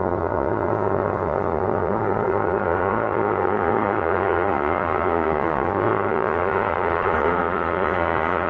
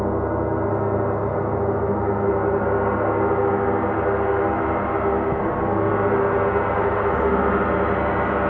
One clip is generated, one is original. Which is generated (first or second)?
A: first